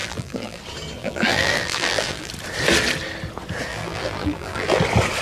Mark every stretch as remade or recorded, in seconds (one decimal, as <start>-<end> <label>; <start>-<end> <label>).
0.0-0.6 remade; 0.6-1.0 recorded; 1.0-2.3 remade; 2.3-3.7 recorded; 3.7-4.8 remade; 4.8-5.2 recorded